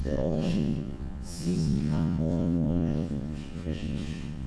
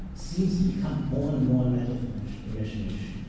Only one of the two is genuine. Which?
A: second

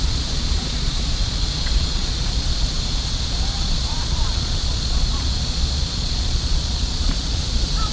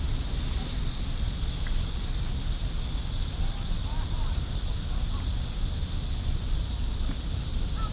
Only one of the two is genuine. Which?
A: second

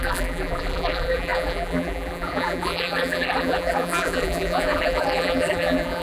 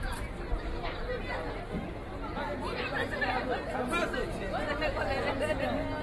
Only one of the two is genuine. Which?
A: second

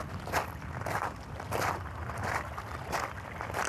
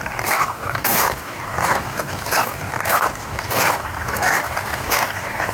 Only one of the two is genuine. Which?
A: first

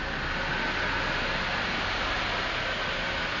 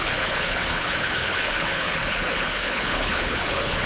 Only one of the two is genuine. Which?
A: first